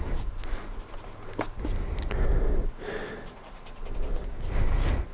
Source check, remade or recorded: recorded